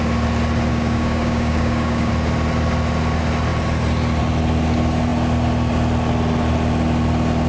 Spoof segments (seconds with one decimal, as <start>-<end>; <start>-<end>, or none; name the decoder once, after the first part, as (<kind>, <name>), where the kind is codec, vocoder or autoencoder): 0.7-2.1 (codec, DAC)